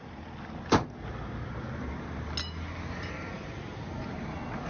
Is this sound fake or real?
real